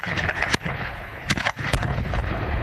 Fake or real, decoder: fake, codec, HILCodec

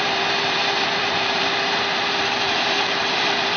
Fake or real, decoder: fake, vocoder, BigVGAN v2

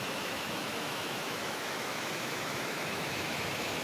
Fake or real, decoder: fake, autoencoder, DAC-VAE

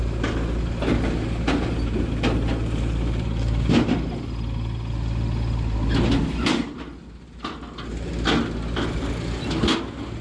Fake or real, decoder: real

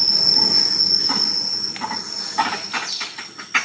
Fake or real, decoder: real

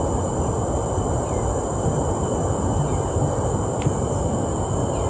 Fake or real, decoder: real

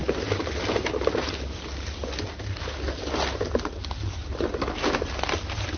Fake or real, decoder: real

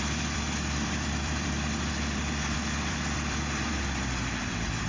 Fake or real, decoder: fake, vocoder, BigVGAN v2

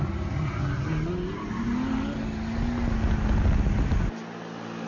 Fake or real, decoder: real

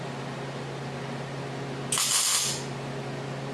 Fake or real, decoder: real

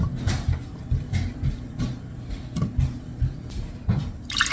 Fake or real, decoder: real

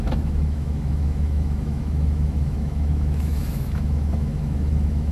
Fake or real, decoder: fake, autoencoder, DAC-VAE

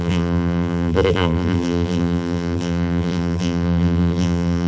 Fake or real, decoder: fake, vocoder, BigVGAN v2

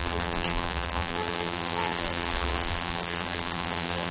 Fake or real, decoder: fake, vocoder, BigVGAN v2